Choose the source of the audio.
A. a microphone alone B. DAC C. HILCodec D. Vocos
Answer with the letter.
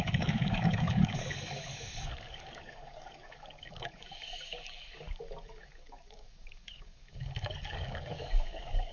B